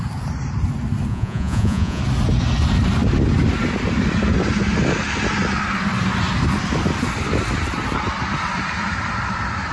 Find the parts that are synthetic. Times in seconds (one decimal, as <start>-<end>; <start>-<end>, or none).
1.1-2.0